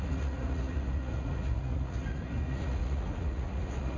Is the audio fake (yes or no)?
yes